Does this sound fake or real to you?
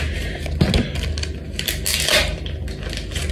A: real